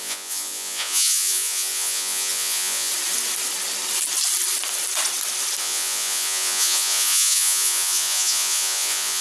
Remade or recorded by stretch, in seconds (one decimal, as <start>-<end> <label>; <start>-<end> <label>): 0.0-2.9 remade; 2.9-5.6 recorded; 5.6-9.2 remade